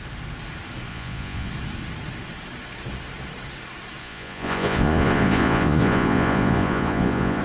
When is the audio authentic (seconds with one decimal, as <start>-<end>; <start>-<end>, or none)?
0.0-0.9; 1.5-4.0